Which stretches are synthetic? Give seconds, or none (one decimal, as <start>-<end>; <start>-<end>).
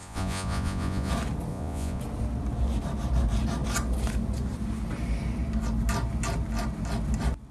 0.0-1.1; 1.5-2.0